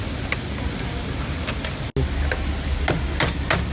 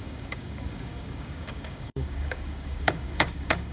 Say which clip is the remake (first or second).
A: second